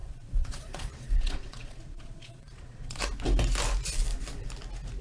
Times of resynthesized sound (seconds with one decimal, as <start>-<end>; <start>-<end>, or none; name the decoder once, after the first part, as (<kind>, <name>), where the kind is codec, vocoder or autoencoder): 0.0-3.0 (vocoder, Vocos)